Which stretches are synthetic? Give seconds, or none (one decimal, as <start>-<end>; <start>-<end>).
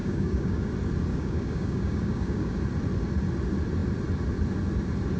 0.0-0.7; 1.1-2.6